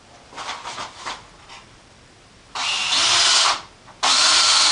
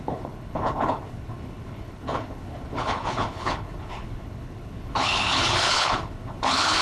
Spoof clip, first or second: second